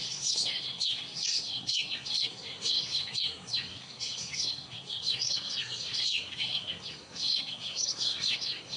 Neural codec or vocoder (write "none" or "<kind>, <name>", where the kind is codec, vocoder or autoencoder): codec, SNAC